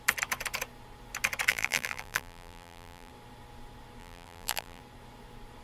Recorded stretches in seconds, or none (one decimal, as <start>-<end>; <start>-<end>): 0.0-1.5; 3.1-4.0; 4.8-5.6